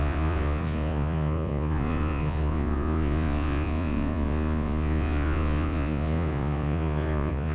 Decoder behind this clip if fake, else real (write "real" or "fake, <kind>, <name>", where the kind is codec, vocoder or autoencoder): fake, vocoder, Vocos